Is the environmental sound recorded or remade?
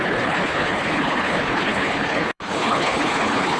remade